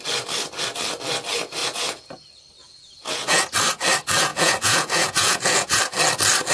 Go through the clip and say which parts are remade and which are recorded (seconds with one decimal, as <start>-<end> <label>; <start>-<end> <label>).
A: 0.0-1.6 recorded; 1.6-2.1 remade; 2.1-2.6 recorded; 2.6-3.4 remade; 3.4-4.3 recorded; 4.3-5.8 remade; 5.8-6.5 recorded